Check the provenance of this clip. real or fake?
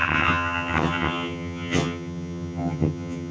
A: fake